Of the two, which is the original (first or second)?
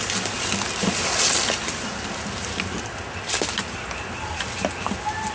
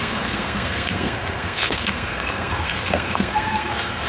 first